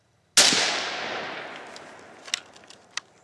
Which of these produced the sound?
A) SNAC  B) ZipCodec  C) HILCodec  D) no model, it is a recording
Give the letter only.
D